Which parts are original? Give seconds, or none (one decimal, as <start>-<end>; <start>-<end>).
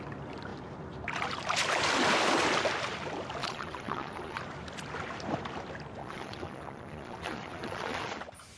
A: 0.0-3.4; 4.4-6.0; 8.2-8.6